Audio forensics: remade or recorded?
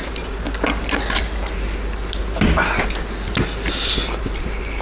recorded